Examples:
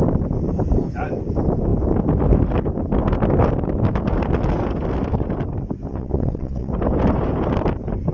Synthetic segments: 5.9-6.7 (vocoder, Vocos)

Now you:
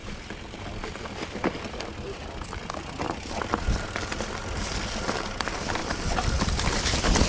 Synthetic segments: 0.0-1.7 (vocoder, BigVGAN v2); 5.8-7.3

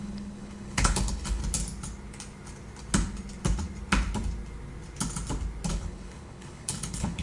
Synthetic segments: 0.0-1.4 (codec, HILCodec); 5.7-7.2

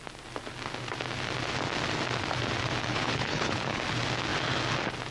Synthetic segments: 2.9-3.8 (codec, HILCodec)

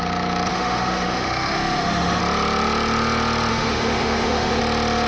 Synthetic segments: 0.5-2.2 (autoencoder, DAC-VAE); 3.5-4.6

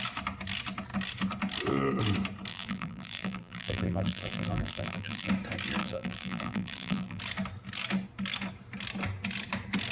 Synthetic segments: 2.5-5.3 (vocoder, BigVGAN v2); 5.8-7.2

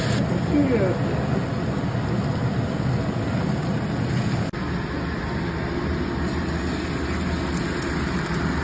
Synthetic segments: none

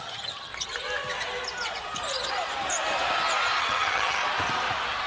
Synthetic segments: 0.0-0.5 (vocoder, HiFi-GAN); 3.6-4.2